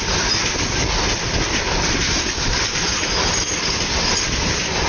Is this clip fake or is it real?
real